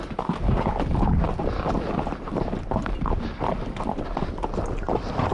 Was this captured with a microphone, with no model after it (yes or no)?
yes